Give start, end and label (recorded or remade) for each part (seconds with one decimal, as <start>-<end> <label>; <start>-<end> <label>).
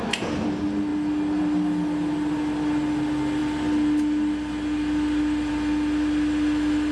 0.0-6.9 recorded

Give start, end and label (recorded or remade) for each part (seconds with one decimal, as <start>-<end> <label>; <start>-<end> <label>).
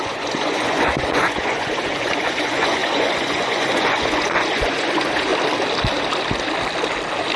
0.0-5.3 remade; 5.3-7.4 recorded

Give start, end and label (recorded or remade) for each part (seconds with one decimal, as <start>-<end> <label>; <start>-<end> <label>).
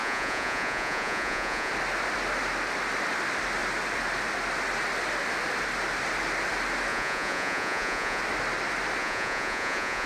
0.0-1.7 remade; 1.7-6.9 recorded; 6.9-8.2 remade; 8.2-9.0 recorded; 9.0-10.1 remade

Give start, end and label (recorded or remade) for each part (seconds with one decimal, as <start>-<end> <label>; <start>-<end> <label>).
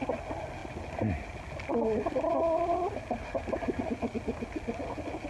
0.0-5.3 recorded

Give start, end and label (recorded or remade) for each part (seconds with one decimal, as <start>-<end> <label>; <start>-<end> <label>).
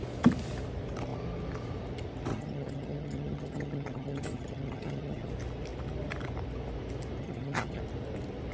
0.0-2.3 recorded; 2.3-5.3 remade; 5.3-7.2 recorded; 7.2-7.8 remade; 7.8-8.5 recorded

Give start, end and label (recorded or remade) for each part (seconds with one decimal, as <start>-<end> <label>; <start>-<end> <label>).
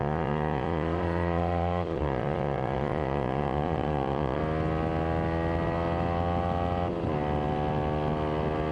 0.0-4.4 remade; 4.4-8.7 recorded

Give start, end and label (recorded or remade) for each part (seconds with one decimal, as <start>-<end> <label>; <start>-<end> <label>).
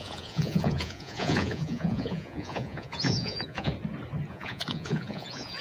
0.0-3.7 remade; 3.7-4.3 recorded; 4.3-5.6 remade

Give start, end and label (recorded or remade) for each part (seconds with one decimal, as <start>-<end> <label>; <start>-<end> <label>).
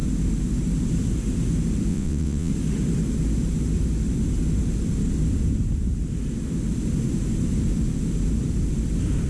0.0-1.9 recorded; 1.9-2.5 remade; 2.5-9.3 recorded